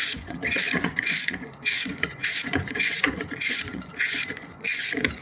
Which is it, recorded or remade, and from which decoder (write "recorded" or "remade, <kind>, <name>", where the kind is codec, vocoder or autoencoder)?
remade, vocoder, Vocos